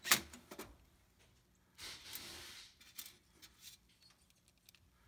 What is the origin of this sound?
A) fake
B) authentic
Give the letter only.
B